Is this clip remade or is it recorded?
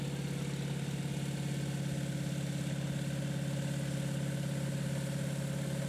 recorded